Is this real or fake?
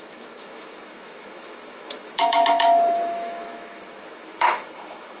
fake